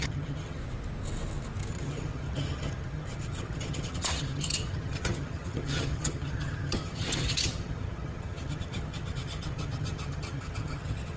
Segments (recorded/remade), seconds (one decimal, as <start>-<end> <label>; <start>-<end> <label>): 0.0-0.6 remade; 0.6-1.7 recorded; 1.7-11.2 remade